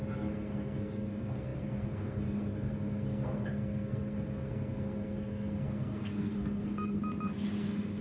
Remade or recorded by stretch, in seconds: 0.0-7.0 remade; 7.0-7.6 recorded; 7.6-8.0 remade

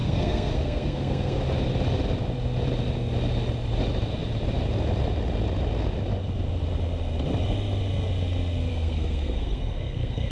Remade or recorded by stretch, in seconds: 0.0-1.4 remade; 1.4-8.7 recorded; 8.7-10.3 remade

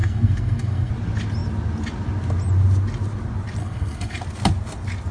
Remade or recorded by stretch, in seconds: 0.0-0.9 remade; 0.9-3.6 recorded; 3.6-4.2 remade; 4.2-5.1 recorded

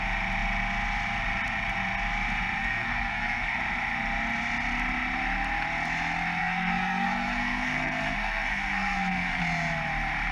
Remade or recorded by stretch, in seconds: 0.0-2.6 recorded; 2.6-3.6 remade; 3.6-6.4 recorded; 6.4-9.4 remade; 9.4-10.3 recorded

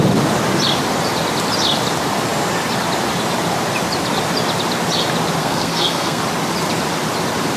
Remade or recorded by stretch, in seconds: 0.0-5.4 recorded; 5.4-6.2 remade; 6.2-7.6 recorded